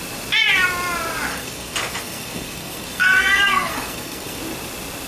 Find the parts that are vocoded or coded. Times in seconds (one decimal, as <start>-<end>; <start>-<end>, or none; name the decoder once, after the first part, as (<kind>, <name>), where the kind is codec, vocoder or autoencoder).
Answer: 1.3-4.4 (codec, SNAC)